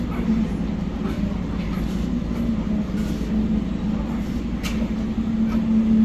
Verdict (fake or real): real